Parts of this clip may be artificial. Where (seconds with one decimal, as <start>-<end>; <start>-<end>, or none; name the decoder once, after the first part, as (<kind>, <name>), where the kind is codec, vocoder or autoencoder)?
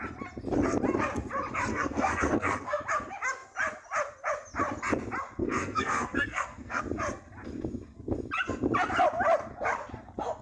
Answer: 1.7-2.8 (codec, SNAC); 5.4-6.8